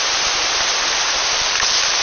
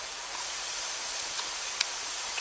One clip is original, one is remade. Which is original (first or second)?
first